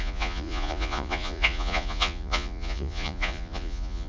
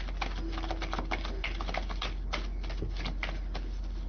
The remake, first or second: first